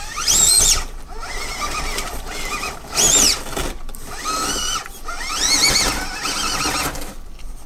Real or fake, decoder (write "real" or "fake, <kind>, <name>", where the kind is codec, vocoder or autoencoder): real